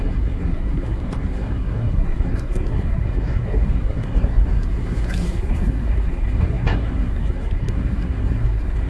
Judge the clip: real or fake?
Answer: fake